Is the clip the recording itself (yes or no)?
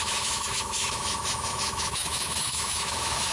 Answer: no